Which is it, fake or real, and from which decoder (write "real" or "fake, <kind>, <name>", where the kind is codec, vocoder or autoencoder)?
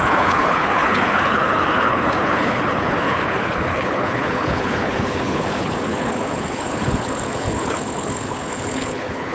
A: fake, codec, HILCodec